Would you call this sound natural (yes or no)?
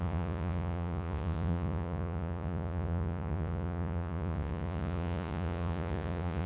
no